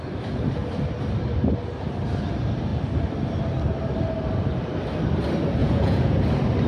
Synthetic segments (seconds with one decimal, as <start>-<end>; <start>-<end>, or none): 5.6-6.2